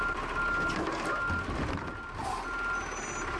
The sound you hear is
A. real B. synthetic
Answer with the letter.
A